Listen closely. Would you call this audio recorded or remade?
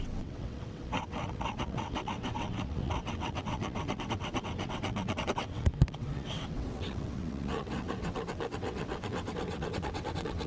remade